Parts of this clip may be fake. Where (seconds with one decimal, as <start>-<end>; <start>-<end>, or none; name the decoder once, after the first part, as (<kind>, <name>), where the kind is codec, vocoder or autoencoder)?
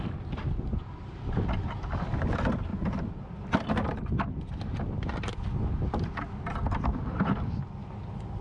none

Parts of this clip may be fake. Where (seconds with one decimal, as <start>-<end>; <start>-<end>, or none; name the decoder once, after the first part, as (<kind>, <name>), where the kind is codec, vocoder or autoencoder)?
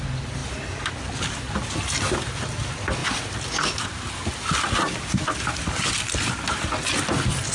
none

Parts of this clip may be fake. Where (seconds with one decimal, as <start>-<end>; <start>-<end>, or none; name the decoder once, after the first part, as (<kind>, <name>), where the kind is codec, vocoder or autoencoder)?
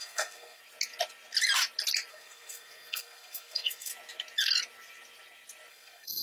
0.0-0.6 (codec, SNAC); 2.1-3.9; 5.7-6.2